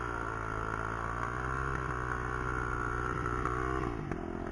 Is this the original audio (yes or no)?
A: yes